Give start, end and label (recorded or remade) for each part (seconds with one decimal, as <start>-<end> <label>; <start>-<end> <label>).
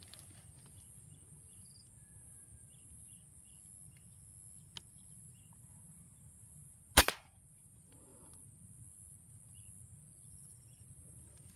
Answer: 0.0-11.6 recorded